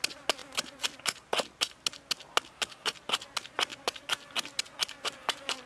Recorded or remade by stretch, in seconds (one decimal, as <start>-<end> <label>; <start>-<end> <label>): 0.0-5.7 recorded